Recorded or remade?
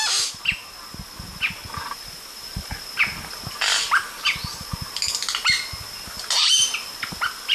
recorded